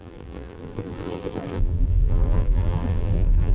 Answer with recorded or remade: remade